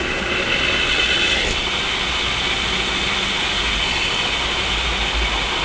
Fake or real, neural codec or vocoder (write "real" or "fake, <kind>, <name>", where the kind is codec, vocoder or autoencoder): real